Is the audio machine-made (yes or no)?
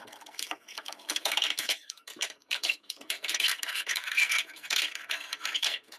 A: yes